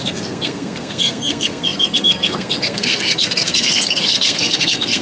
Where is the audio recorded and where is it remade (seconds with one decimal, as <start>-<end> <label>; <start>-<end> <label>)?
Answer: 0.0-5.0 remade